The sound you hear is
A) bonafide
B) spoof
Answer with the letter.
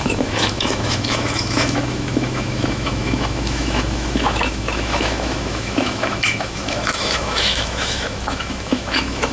B